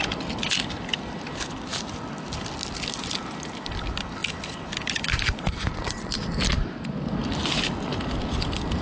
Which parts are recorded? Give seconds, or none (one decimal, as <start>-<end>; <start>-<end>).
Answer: 0.0-4.2; 6.4-7.2